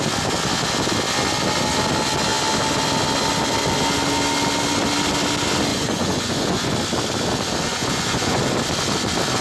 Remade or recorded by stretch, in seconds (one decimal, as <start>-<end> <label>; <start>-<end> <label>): 0.0-5.7 recorded; 5.7-6.7 remade; 6.7-7.7 recorded; 7.7-8.4 remade; 8.4-9.4 recorded